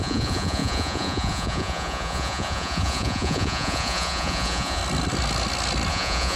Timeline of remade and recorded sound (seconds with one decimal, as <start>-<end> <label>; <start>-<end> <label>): 0.0-4.8 remade; 4.8-5.9 recorded; 5.9-6.4 remade